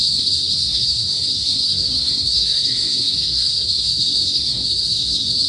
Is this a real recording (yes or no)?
no